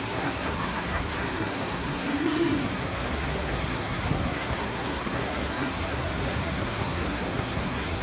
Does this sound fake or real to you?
fake